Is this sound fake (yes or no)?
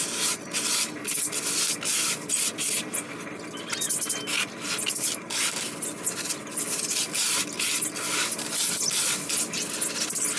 no